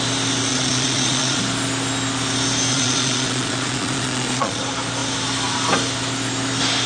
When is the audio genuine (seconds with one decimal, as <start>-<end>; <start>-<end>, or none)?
0.0-0.5; 1.4-2.7; 4.6-6.9